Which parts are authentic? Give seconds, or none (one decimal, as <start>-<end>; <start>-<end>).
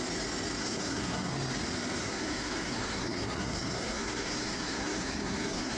0.0-0.6; 1.3-2.0